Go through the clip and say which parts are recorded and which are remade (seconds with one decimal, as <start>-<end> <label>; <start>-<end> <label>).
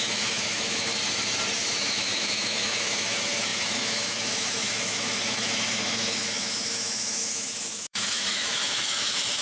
0.0-0.9 remade; 0.9-1.7 recorded; 1.7-9.4 remade